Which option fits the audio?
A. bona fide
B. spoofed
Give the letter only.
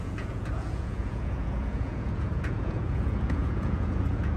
B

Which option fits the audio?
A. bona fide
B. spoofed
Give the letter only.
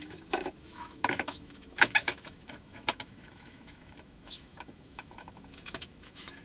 B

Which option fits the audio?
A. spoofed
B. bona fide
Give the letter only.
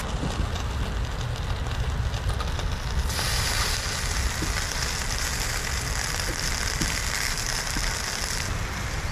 B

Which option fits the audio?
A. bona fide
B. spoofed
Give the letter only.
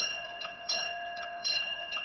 B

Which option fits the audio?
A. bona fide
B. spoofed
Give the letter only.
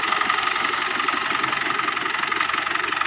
A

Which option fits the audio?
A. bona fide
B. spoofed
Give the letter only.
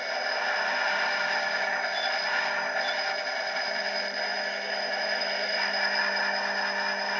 A